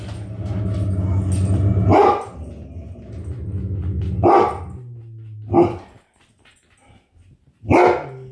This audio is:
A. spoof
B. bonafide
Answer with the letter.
B